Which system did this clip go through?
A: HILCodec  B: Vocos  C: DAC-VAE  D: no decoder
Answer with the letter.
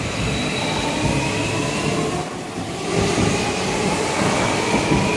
D